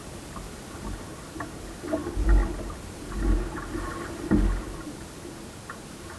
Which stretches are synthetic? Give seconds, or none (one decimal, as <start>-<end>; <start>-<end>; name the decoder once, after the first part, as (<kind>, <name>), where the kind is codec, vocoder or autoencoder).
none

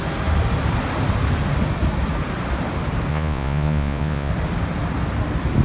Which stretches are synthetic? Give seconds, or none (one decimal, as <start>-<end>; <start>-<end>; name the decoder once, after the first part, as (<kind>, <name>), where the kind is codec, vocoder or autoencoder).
3.1-4.3 (vocoder, Vocos)

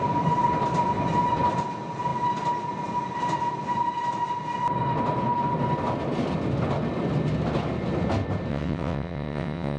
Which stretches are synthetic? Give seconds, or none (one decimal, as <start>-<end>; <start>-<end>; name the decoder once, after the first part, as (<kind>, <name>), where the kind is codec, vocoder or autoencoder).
8.5-9.8 (vocoder, WaveNeXt)

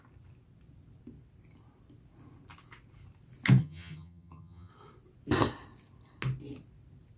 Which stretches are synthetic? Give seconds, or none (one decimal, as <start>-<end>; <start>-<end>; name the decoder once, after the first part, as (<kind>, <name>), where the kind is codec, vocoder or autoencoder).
3.6-4.7 (vocoder, HiFi-GAN)